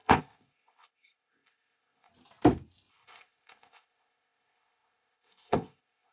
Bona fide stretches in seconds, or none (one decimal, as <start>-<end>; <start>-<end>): 2.1-2.9

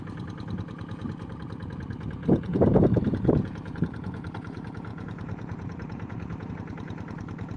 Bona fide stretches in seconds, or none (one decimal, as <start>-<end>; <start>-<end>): 0.0-2.2; 3.8-4.9; 6.5-7.6

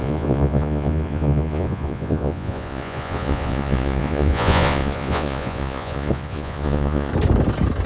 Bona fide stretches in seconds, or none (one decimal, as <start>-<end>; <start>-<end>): 7.1-7.9

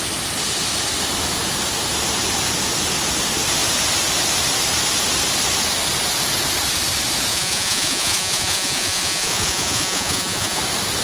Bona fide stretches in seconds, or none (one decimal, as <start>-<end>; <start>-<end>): 0.0-7.3; 10.6-11.0

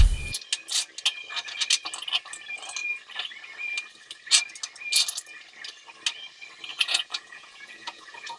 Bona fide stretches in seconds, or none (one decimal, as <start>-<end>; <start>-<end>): 0.0-6.7